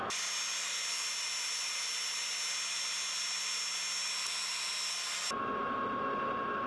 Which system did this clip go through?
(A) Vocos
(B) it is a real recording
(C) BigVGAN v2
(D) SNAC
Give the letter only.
B